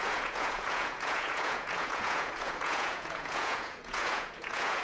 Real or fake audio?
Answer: fake